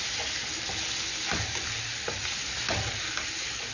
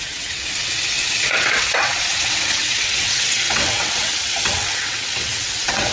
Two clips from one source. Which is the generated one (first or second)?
second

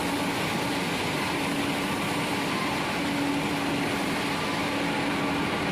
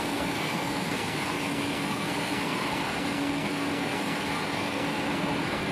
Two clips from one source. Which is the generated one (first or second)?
second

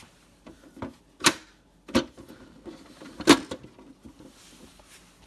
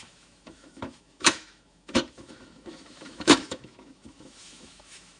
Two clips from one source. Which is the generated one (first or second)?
second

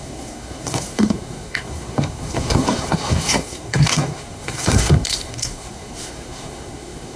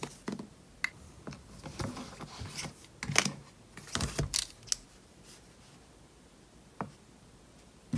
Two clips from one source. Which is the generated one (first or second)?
first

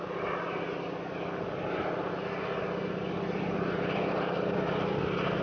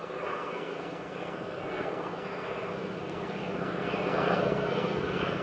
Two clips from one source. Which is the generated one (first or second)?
second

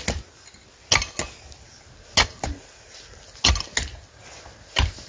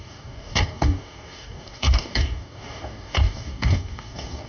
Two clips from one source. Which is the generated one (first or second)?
second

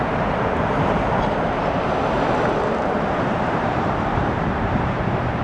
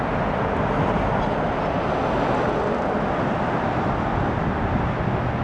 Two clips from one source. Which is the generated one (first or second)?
first